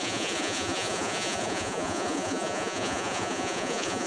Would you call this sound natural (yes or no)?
no